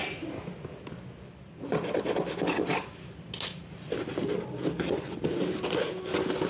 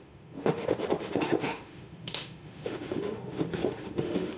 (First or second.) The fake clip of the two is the second